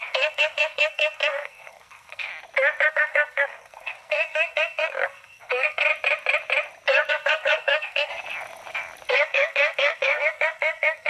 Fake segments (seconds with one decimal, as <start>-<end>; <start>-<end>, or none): 0.0-2.3; 2.9-5.9; 7.1-8.1; 9.1-11.1